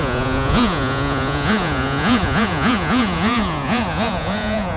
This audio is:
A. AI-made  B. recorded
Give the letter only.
A